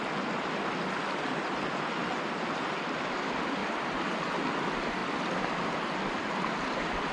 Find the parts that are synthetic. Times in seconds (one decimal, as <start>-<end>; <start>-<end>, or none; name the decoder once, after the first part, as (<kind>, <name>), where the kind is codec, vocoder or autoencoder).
none